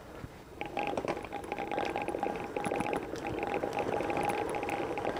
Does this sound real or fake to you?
fake